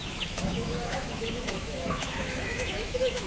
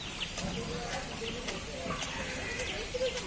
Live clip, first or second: second